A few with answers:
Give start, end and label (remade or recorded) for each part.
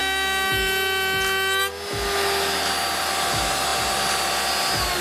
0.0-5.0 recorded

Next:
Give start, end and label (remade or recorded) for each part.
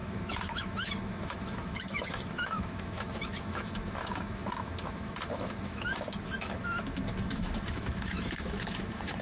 0.0-9.2 remade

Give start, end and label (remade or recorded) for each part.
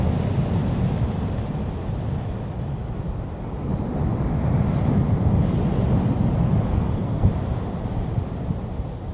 0.0-6.7 recorded; 6.7-7.3 remade; 7.3-9.1 recorded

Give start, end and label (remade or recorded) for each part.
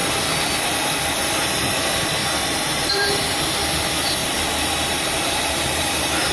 0.0-2.2 recorded; 2.2-3.4 remade; 3.4-4.2 recorded; 4.2-5.8 remade; 5.8-6.3 recorded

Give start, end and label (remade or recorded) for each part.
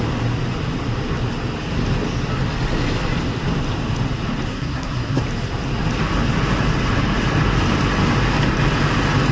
0.0-4.5 recorded; 4.5-5.2 remade; 5.2-9.3 recorded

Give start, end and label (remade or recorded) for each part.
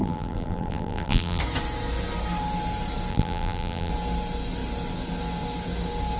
0.0-1.4 remade; 1.4-3.1 recorded; 3.1-3.9 remade; 3.9-6.2 recorded